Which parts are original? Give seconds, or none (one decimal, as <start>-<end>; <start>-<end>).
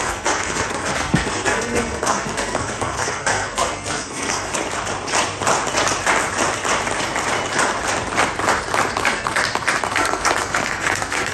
4.5-9.0; 9.4-9.9